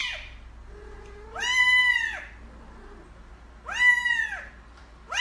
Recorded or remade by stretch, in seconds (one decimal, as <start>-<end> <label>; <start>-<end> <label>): 0.0-1.8 recorded; 1.8-2.3 remade; 2.3-5.2 recorded